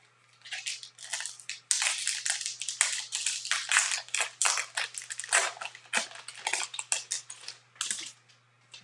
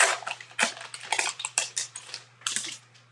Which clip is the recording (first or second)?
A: first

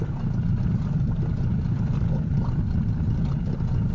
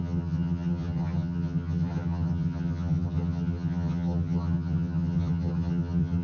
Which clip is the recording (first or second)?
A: first